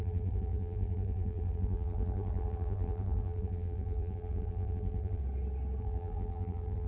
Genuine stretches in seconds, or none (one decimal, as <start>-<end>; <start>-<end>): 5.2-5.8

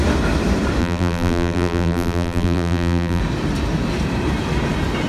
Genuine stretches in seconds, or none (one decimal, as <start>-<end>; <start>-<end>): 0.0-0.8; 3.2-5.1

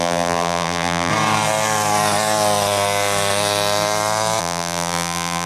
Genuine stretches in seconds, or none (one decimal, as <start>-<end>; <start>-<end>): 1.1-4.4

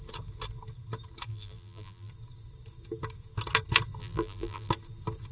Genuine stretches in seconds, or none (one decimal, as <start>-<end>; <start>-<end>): 0.0-1.3; 2.1-4.0; 4.7-5.3

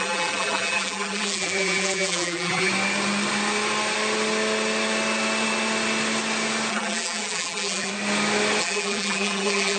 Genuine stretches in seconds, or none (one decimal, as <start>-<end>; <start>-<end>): 2.7-6.7; 7.9-8.6

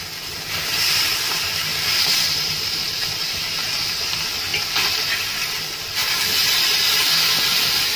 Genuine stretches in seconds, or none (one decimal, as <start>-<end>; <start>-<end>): 0.0-1.7; 4.0-8.0

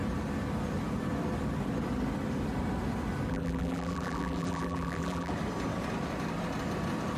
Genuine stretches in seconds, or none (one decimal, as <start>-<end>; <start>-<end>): 0.0-3.3; 5.3-7.2